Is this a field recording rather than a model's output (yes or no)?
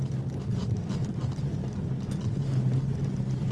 yes